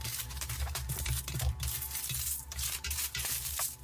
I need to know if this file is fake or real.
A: fake